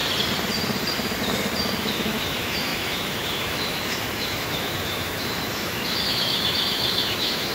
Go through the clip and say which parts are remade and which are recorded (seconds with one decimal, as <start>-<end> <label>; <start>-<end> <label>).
0.0-1.8 recorded; 1.8-7.5 remade